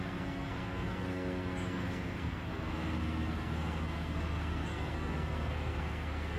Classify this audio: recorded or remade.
remade